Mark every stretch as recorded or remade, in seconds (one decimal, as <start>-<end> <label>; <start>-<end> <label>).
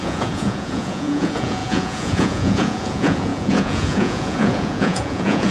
0.0-5.5 remade